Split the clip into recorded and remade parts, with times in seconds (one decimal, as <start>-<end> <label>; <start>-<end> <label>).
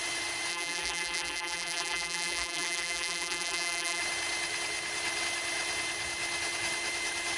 0.0-0.5 recorded; 0.5-4.0 remade; 4.0-7.4 recorded